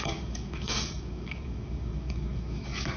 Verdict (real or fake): fake